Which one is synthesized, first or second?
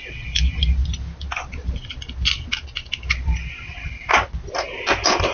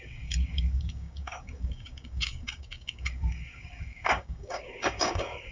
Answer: second